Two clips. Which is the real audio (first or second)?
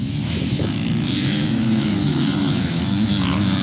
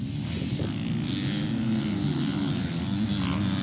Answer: second